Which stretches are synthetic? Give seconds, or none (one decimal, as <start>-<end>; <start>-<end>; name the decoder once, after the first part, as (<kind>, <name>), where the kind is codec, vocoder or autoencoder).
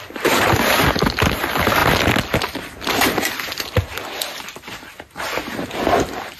none